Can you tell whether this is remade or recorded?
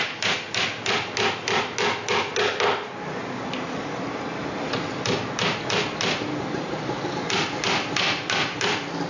recorded